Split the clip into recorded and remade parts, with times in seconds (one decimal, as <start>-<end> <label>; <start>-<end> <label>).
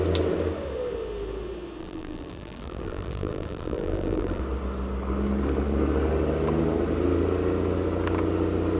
0.0-1.8 recorded; 1.8-4.4 remade; 4.4-8.8 recorded